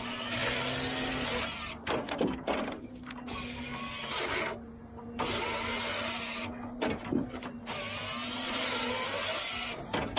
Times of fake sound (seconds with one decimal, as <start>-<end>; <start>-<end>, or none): none

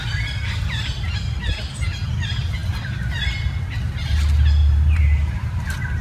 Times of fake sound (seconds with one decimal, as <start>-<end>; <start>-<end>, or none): 4.6-6.0

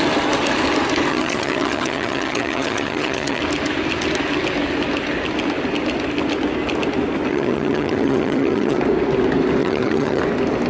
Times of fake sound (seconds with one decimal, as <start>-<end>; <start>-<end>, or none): 1.1-3.4; 7.3-8.8; 9.6-10.2

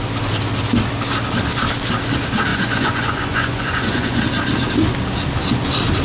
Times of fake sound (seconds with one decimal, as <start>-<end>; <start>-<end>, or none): 2.5-4.2

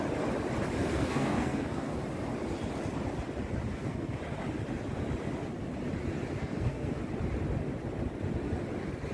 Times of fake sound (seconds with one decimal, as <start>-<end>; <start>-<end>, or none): 0.8-2.0; 3.7-4.2; 6.4-7.0

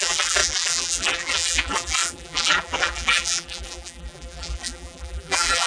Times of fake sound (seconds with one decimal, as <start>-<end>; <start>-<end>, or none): 0.0-5.7